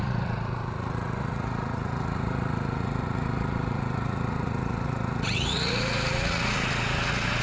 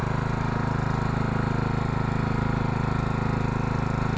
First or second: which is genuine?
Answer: second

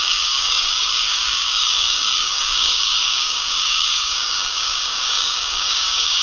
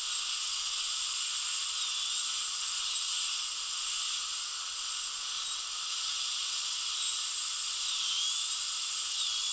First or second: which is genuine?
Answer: second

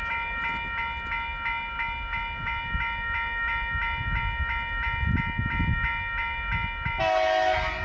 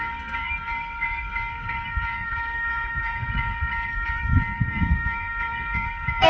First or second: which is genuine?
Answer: first